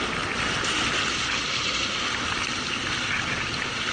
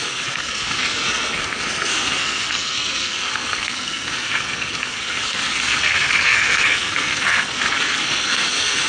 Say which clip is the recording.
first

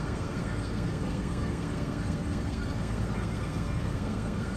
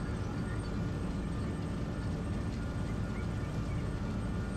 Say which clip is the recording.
second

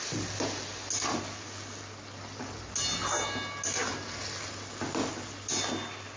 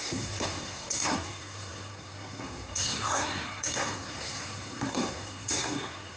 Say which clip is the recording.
first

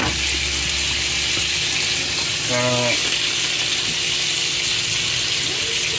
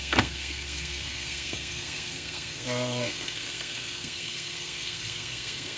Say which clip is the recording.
first